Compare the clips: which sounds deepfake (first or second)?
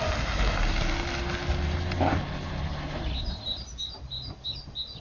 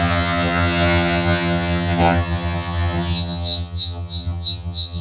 second